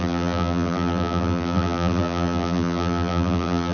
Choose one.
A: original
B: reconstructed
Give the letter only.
B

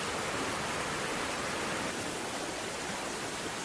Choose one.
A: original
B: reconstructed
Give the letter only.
A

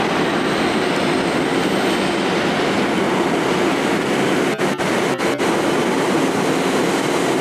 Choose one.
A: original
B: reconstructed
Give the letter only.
A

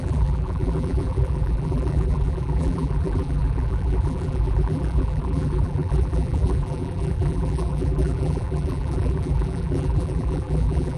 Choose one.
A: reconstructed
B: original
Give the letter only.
A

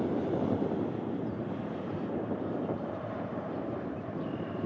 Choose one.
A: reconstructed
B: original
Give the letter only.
A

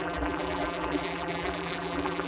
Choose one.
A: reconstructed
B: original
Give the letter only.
A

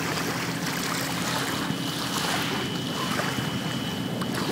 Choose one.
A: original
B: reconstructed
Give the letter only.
A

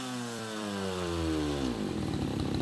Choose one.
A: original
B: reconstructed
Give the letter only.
B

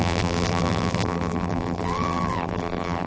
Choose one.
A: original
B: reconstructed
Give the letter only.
B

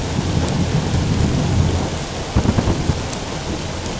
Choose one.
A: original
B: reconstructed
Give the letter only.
A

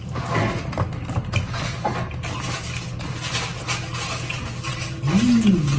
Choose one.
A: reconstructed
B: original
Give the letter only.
B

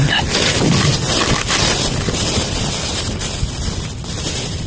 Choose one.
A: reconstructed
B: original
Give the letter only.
B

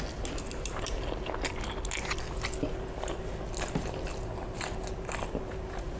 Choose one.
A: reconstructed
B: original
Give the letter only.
B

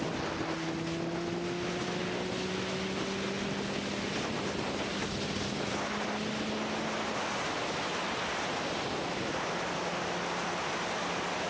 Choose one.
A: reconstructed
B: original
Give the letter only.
B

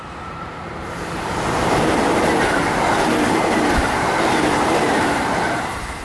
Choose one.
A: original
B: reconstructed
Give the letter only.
B